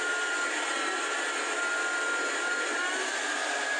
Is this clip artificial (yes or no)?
no